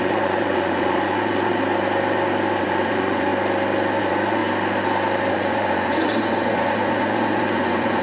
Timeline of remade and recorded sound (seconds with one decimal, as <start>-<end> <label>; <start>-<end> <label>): 0.0-1.5 remade; 1.5-2.6 recorded; 2.6-3.3 remade; 3.3-4.0 recorded; 4.0-4.4 remade; 4.4-5.3 recorded; 5.3-8.0 remade